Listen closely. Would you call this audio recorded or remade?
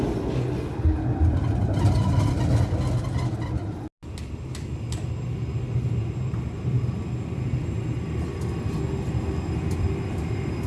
recorded